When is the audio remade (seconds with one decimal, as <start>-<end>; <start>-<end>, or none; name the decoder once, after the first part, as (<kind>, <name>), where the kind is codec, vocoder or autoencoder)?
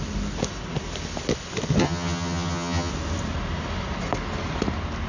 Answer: 1.8-2.9 (vocoder, HiFi-GAN)